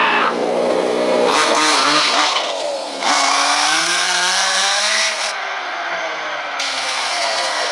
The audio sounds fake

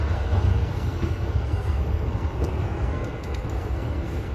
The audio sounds fake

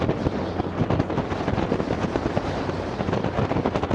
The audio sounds real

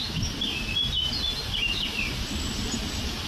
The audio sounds real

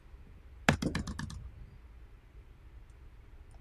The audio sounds real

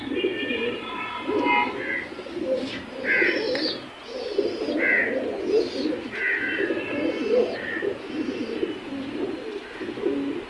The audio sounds real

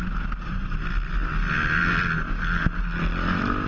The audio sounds real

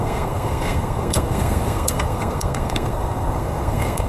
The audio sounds fake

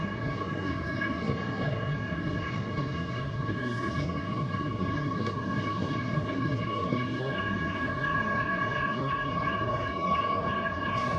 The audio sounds fake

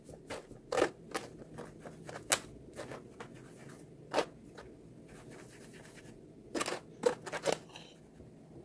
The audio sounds real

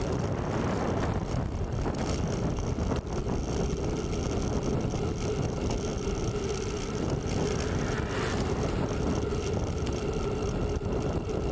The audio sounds real